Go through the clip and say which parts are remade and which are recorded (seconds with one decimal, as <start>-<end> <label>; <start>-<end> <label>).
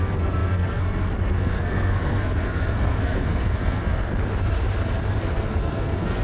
0.0-4.1 remade; 4.1-5.1 recorded; 5.1-6.2 remade